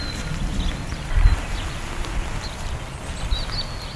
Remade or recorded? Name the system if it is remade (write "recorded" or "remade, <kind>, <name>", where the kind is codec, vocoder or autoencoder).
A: recorded